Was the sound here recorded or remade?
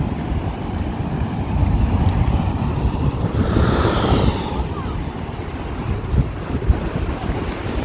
remade